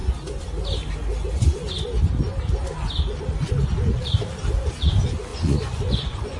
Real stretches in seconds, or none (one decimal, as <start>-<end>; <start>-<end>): 0.0-5.3